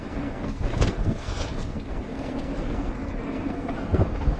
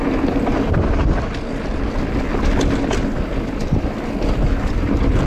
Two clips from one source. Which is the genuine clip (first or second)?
second